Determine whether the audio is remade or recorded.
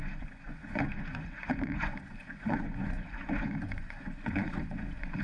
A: remade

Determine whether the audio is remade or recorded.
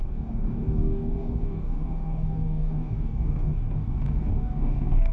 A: remade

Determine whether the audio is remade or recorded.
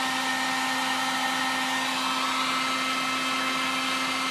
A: recorded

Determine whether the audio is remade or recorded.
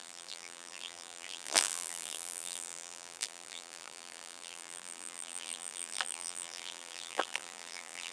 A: remade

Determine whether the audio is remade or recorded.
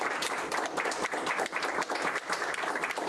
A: remade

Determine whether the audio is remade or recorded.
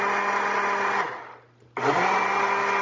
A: recorded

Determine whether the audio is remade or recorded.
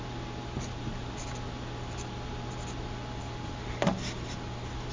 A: recorded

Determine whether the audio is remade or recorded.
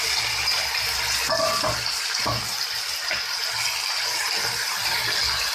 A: recorded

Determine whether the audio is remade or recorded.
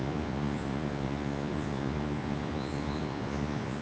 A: remade